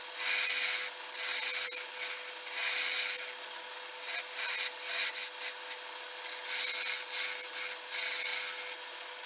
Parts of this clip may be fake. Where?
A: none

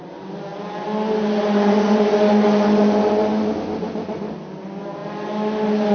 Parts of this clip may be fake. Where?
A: none

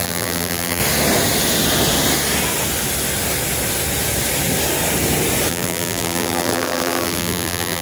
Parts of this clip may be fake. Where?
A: 0.0-0.8 (vocoder, BigVGAN v2); 5.5-7.8

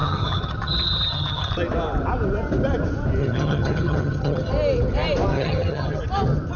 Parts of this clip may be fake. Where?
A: 0.0-1.5 (vocoder, HiFi-GAN); 3.2-4.5; 5.3-6.0

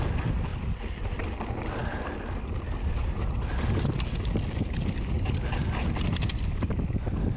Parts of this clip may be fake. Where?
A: 0.5-1.2 (vocoder, BigVGAN v2)

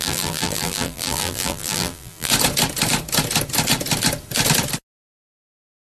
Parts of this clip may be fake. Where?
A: 0.0-2.3 (vocoder, BigVGAN v2)

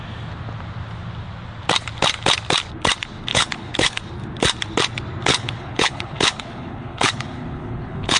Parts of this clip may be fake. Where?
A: 3.3-4.0 (codec, HILCodec); 5.3-8.2